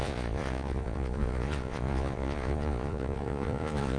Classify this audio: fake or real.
fake